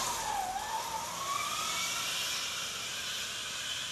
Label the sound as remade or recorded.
recorded